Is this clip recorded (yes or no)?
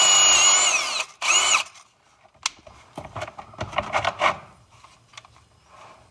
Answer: yes